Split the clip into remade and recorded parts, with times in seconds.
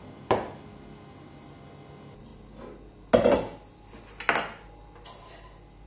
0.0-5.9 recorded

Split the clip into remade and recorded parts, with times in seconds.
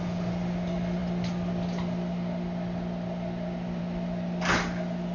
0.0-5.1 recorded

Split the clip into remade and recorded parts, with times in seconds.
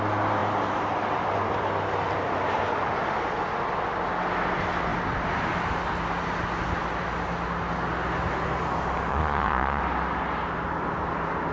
0.0-9.1 recorded; 9.1-9.8 remade; 9.8-11.5 recorded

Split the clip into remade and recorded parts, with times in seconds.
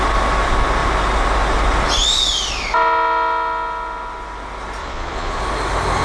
0.0-4.8 recorded; 4.8-5.4 remade; 5.4-6.0 recorded